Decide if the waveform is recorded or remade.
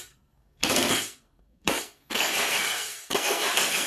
remade